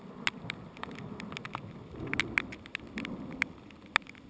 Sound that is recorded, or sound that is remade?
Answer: recorded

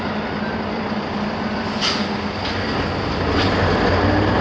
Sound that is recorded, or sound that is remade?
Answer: recorded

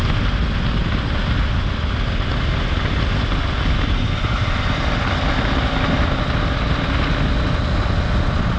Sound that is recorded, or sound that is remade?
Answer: recorded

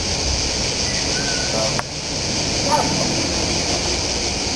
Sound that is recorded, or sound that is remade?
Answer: recorded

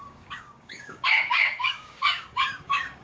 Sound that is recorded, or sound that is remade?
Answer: remade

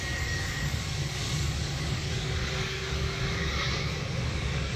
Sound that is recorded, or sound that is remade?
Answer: remade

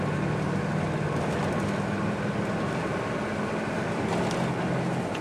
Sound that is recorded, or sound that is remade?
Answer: recorded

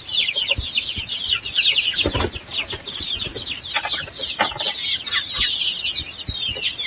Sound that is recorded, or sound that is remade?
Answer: recorded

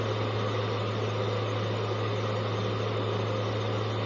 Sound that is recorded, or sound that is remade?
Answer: recorded